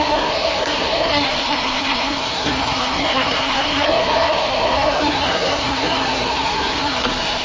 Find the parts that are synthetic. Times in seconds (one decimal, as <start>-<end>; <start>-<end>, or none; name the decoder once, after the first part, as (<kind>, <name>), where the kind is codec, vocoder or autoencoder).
0.0-7.4 (codec, SNAC)